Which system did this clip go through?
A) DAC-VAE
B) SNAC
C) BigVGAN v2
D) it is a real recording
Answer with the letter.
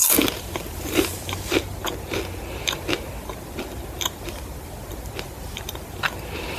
D